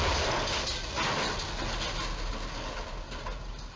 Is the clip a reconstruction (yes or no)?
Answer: no